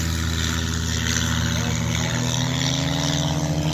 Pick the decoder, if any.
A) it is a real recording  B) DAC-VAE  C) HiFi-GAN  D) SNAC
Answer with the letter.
A